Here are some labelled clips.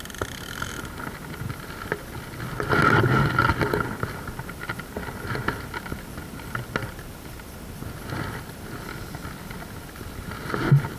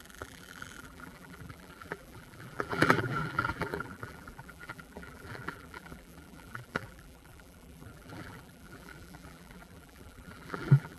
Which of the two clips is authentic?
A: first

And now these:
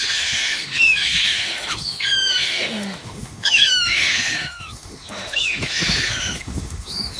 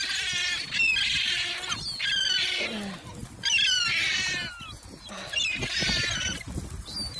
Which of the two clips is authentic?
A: second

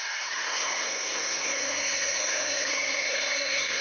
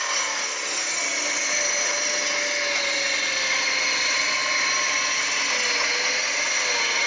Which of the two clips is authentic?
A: second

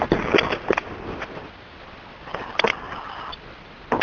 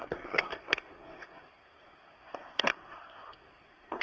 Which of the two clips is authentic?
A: first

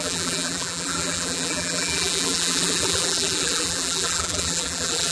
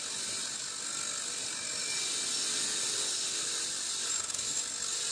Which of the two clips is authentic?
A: second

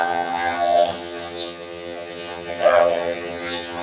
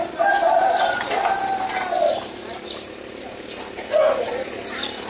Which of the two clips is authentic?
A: second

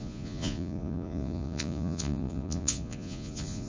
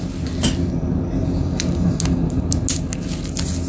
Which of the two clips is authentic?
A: second